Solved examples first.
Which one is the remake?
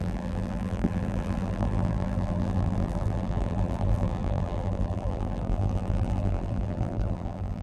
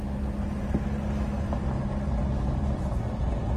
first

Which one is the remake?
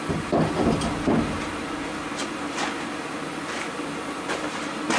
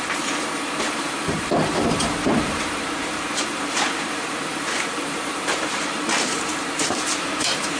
second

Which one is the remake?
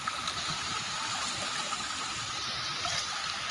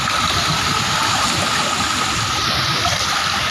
first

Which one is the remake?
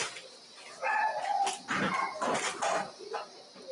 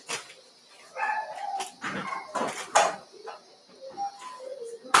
first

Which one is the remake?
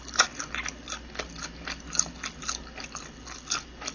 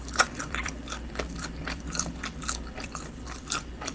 second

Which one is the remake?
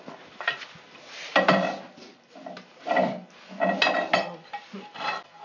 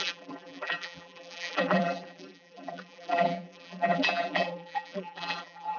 second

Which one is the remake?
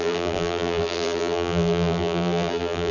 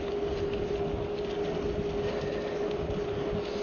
first